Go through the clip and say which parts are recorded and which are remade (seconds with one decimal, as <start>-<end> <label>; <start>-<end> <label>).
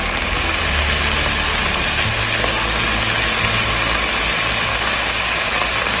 0.0-4.7 recorded; 4.7-5.5 remade; 5.5-6.0 recorded